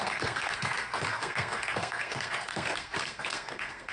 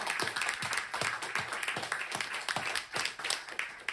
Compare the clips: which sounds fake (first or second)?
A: first